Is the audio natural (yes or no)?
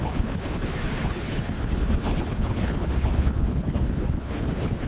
no